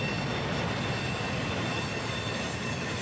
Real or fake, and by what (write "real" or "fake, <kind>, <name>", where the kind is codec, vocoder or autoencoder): real